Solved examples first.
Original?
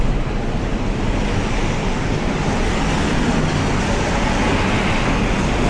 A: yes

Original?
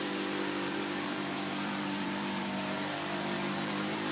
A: no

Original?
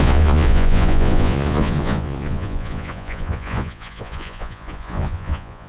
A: no